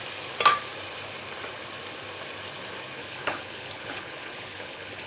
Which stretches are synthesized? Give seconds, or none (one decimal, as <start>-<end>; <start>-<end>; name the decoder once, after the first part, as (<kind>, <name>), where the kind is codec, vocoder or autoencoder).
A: 3.0-5.1 (codec, HILCodec)

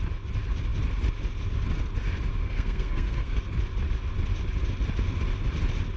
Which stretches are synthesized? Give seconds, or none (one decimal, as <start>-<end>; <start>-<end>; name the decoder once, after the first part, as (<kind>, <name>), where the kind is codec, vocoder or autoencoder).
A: 2.4-3.4 (codec, SNAC)